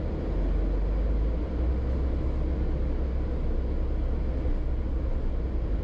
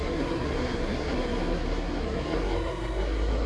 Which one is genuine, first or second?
first